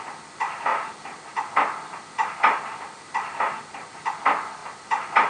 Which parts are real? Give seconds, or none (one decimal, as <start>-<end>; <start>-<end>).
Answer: 0.0-5.3